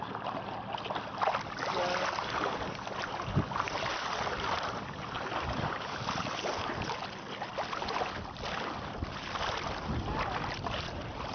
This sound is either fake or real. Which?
real